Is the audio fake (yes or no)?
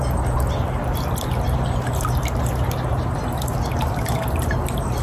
no